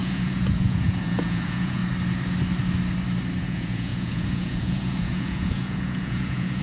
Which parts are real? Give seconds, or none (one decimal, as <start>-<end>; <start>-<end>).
1.8-3.4